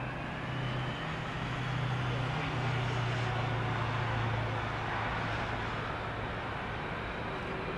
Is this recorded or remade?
recorded